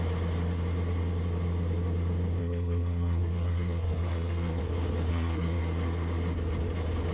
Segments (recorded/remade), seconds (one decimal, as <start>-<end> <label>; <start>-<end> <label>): 0.0-2.4 recorded; 2.4-4.6 remade; 4.6-5.1 recorded; 5.1-5.6 remade; 5.6-7.1 recorded